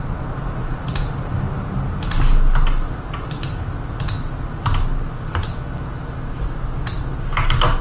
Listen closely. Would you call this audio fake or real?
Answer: real